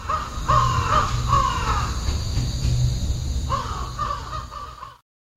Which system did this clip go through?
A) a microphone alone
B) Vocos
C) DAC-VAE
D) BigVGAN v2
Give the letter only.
A